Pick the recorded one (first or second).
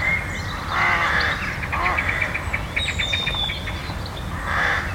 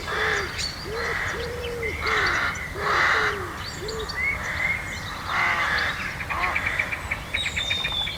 first